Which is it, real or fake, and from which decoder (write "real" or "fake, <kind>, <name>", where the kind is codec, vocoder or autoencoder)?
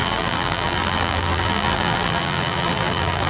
fake, vocoder, BigVGAN v2